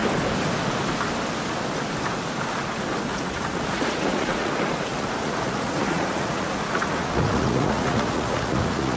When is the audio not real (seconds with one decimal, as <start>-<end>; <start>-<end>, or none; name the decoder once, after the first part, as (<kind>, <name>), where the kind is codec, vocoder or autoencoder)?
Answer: 3.1-4.5 (vocoder, Vocos); 4.9-9.0

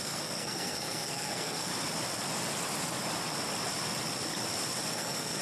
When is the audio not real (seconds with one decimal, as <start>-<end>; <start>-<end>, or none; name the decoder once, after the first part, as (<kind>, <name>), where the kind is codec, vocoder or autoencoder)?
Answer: 0.0-1.7 (codec, SNAC); 4.9-5.4

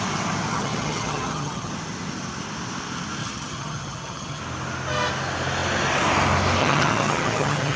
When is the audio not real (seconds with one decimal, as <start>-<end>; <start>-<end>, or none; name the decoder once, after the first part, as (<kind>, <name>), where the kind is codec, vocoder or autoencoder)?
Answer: 0.5-1.7 (vocoder, HiFi-GAN); 3.2-4.4; 6.6-7.8

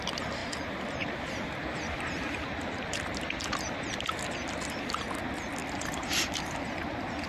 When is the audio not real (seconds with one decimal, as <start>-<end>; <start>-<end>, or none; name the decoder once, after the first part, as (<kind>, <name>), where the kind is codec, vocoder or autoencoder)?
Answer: 0.4-4.5 (vocoder, BigVGAN v2)

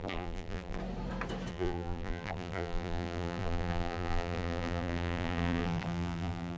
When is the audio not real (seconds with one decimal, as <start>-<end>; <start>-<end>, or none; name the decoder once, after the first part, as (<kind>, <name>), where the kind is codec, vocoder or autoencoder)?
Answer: 0.0-0.8 (vocoder, BigVGAN v2); 1.5-6.6

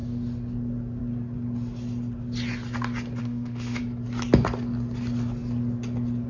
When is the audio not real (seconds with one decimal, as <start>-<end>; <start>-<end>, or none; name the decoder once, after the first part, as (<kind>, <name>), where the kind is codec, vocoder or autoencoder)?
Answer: 3.2-3.8 (autoencoder, DAC-VAE)

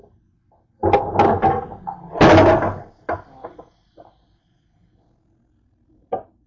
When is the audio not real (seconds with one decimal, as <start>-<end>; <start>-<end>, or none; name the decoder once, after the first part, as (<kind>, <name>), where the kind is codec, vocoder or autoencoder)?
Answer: none

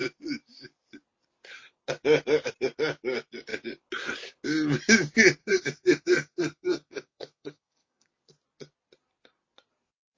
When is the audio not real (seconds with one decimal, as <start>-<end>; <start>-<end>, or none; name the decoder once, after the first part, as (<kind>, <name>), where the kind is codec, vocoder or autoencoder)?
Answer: 5.4-8.1 (codec, SNAC)